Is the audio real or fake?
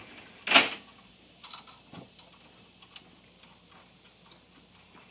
real